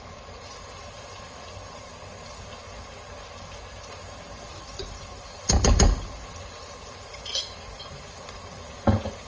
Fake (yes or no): no